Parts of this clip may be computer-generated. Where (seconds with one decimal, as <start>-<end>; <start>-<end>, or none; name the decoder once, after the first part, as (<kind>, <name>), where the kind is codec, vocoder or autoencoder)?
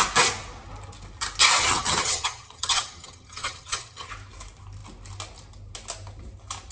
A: 1.6-4.1 (vocoder, HiFi-GAN)